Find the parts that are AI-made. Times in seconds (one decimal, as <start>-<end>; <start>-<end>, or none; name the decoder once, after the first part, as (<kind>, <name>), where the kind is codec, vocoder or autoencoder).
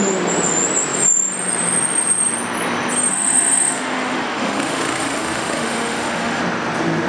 3.1-6.4 (autoencoder, DAC-VAE)